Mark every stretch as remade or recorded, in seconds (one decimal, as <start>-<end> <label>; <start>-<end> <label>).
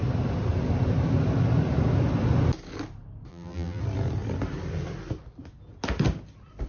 0.0-3.3 recorded; 3.3-3.8 remade; 3.8-6.7 recorded